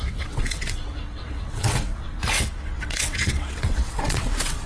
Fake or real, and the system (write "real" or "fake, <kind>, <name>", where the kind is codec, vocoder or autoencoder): fake, vocoder, WaveNeXt